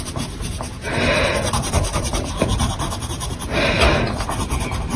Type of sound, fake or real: fake